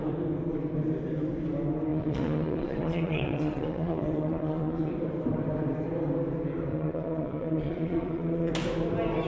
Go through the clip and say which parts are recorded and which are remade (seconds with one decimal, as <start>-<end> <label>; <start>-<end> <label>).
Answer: 0.0-1.9 recorded; 1.9-4.9 remade; 4.9-6.7 recorded; 6.7-8.5 remade; 8.5-9.3 recorded